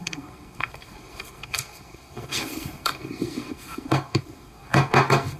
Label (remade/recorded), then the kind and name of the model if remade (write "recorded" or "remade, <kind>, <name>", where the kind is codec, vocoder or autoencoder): remade, codec, SNAC